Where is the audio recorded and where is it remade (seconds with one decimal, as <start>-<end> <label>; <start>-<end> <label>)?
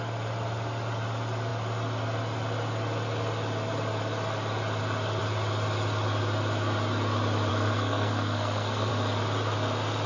0.0-7.5 recorded; 7.5-8.9 remade; 8.9-10.1 recorded